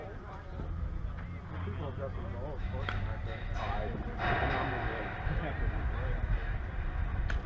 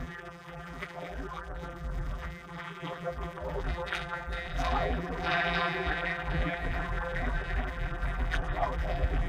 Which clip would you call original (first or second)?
first